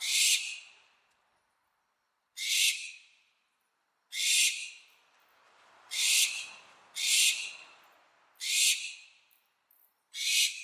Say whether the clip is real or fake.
fake